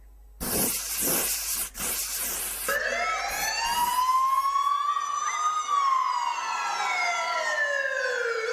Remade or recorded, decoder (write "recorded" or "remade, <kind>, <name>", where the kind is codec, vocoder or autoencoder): recorded